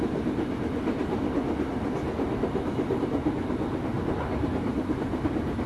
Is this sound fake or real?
real